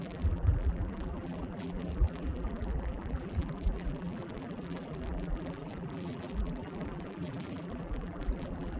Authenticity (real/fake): fake